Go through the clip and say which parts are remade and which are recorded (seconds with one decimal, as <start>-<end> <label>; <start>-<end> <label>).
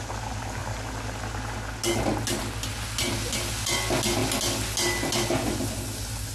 0.0-6.3 recorded